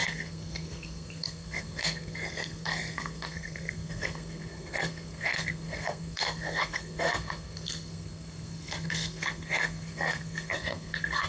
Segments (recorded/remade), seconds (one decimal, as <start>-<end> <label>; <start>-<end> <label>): 0.0-11.3 remade